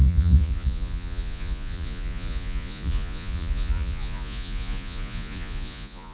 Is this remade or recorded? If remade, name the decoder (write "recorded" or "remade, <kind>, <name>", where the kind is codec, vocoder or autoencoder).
remade, vocoder, Vocos